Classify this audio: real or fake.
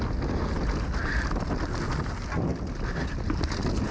real